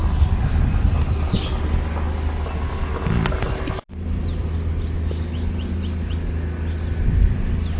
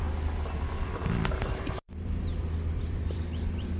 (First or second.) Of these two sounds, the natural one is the first